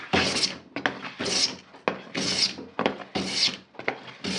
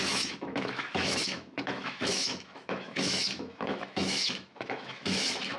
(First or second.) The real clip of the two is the first